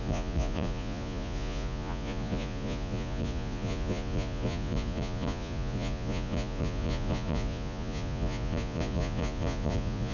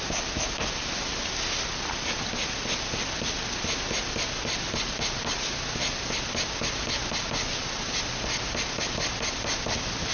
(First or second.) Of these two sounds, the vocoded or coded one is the first